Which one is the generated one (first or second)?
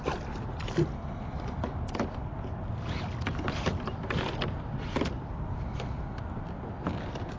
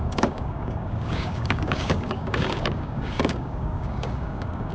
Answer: second